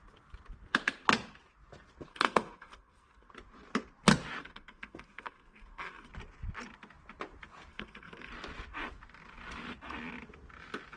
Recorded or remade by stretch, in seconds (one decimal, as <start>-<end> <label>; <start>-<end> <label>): 0.0-2.1 recorded; 2.1-3.3 remade; 3.3-4.4 recorded; 4.4-6.1 remade; 6.1-7.7 recorded; 7.7-8.3 remade; 8.3-11.0 recorded